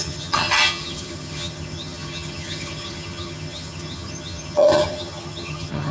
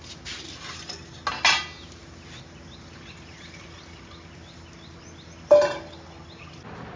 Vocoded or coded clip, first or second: first